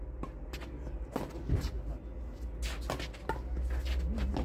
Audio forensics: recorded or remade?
recorded